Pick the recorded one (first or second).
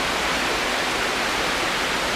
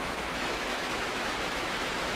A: first